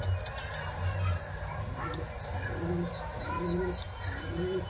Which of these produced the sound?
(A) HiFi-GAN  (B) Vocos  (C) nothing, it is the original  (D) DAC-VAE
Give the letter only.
C